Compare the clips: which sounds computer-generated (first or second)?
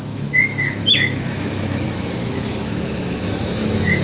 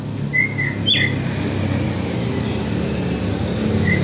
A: first